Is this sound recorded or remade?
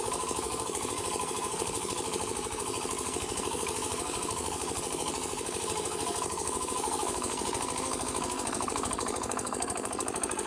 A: remade